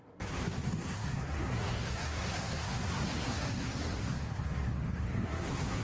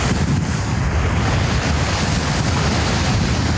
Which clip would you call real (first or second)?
second